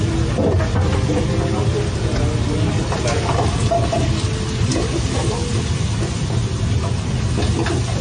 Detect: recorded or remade recorded